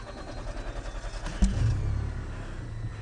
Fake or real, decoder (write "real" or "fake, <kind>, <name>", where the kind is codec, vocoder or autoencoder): real